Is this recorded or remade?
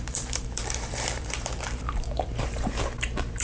remade